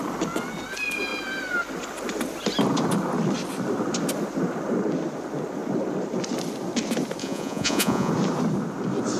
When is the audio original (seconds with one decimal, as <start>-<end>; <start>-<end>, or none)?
0.0-7.2; 8.1-9.2